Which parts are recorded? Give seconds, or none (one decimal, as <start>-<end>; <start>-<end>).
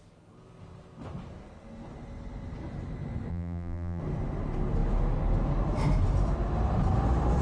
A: 0.0-3.3; 4.0-7.4